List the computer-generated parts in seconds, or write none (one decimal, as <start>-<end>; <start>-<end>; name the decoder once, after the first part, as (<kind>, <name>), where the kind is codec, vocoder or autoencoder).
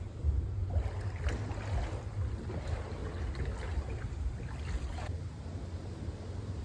0.0-0.6 (vocoder, BigVGAN v2); 2.5-3.0; 4.8-6.6